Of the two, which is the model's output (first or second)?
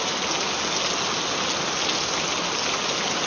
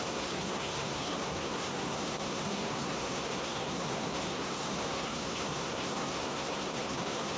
second